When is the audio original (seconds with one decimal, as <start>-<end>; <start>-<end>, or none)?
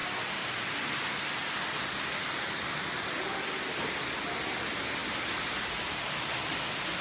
0.0-7.0